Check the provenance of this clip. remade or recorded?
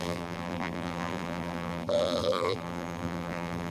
remade